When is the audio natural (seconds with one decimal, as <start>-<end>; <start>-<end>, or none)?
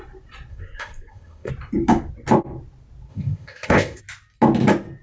0.0-0.5; 1.5-3.1; 4.0-5.0